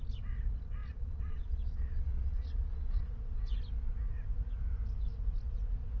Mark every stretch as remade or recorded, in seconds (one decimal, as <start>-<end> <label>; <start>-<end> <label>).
0.0-0.8 recorded; 0.8-3.1 remade; 3.1-6.0 recorded